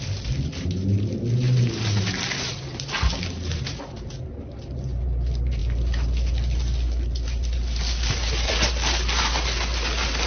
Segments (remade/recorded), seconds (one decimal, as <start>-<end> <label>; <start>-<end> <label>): 0.0-10.3 recorded